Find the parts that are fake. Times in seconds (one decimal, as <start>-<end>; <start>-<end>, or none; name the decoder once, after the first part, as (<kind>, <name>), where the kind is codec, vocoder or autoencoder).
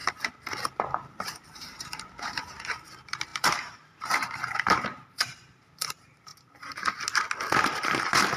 1.1-6.3 (vocoder, BigVGAN v2); 7.6-8.4